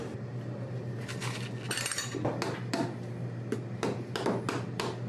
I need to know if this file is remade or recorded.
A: recorded